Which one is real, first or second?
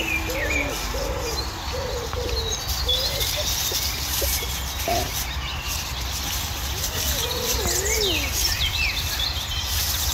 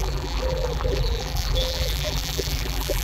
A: first